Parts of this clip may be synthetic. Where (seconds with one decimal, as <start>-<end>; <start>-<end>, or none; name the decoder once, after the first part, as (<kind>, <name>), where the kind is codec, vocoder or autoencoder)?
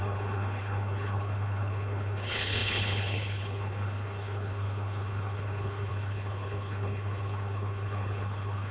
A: 0.0-8.7 (codec, HILCodec)